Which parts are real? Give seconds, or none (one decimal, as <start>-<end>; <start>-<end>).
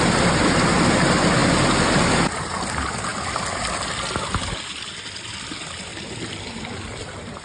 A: 0.0-7.4